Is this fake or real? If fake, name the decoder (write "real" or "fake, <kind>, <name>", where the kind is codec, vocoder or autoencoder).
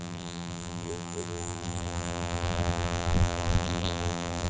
fake, vocoder, BigVGAN v2